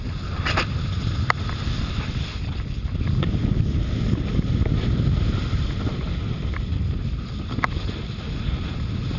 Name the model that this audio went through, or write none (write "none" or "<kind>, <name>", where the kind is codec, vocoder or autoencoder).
none